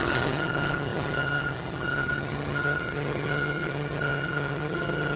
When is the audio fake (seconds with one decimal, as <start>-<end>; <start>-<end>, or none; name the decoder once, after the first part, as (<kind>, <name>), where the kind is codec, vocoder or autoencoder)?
0.0-5.2 (vocoder, HiFi-GAN)